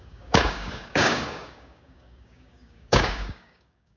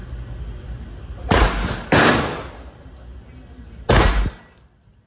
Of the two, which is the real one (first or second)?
second